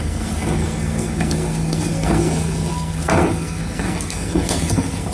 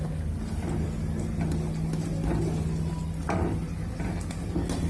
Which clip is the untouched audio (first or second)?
second